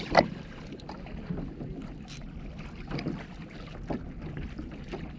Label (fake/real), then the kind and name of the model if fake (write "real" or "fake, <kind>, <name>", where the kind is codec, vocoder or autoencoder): real